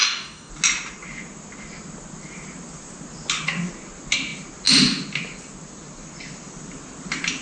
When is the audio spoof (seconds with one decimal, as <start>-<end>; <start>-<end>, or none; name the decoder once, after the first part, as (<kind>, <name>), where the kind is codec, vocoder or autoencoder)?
0.0-0.5 (codec, DAC)